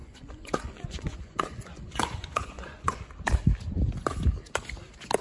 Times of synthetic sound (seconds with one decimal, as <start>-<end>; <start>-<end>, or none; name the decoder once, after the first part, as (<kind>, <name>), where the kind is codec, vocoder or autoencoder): 0.0-3.1 (vocoder, Vocos)